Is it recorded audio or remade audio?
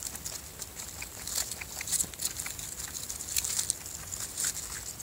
recorded